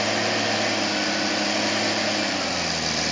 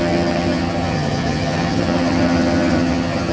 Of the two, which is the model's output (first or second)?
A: second